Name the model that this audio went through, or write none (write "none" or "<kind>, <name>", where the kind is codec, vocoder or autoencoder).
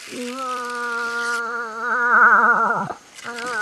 vocoder, BigVGAN v2